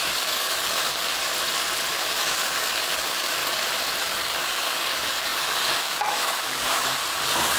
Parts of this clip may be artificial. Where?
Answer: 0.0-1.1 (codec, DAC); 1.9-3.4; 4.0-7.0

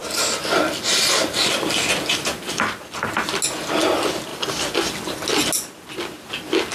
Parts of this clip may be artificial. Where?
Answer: none

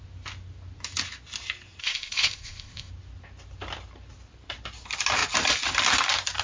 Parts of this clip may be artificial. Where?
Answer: 1.8-2.9 (codec, ZipCodec)

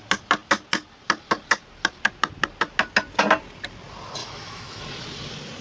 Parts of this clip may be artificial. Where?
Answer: 4.2-4.8 (autoencoder, DAC-VAE)

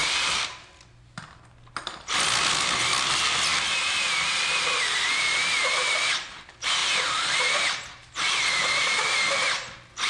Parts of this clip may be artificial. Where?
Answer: 3.5-5.4 (vocoder, BigVGAN v2); 6.8-7.6

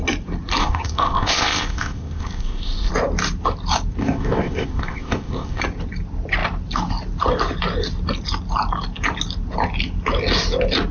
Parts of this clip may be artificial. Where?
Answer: 0.6-2.9 (codec, ZipCodec); 4.0-5.6

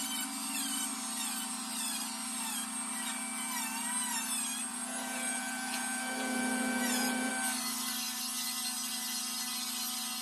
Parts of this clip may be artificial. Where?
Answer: 4.7-7.3 (vocoder, Vocos)

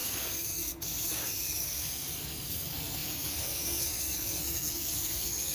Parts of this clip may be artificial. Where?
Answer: 0.0-5.5 (codec, SNAC)